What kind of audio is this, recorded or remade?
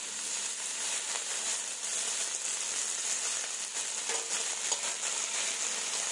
recorded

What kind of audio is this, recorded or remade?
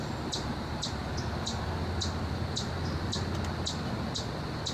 recorded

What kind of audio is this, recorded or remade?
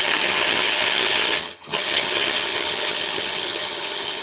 remade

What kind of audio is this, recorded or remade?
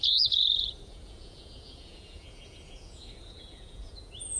remade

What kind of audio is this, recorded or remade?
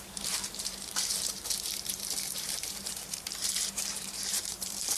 remade